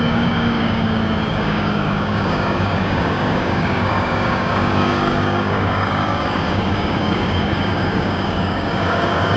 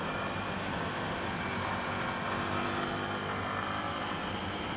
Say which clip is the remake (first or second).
first